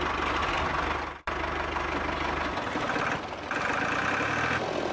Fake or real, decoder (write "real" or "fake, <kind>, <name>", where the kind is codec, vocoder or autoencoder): real